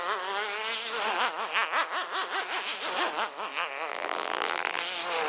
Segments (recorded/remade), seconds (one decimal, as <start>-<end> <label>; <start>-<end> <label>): 0.0-3.9 recorded; 3.9-4.8 remade; 4.8-5.3 recorded